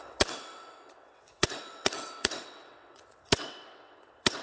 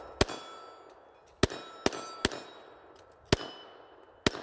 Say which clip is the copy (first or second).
first